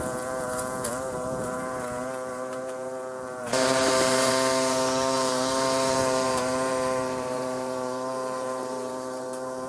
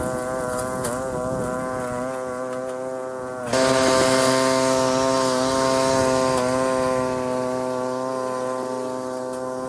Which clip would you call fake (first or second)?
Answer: first